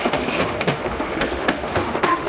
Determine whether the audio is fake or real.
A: fake